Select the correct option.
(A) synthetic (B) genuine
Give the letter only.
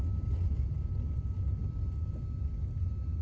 B